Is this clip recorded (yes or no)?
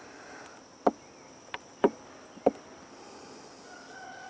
yes